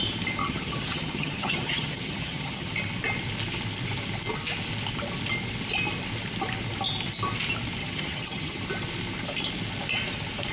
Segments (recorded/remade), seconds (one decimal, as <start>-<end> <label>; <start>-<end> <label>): 0.0-0.4 recorded; 0.4-2.7 remade; 2.7-7.8 recorded; 7.8-8.6 remade; 8.6-10.5 recorded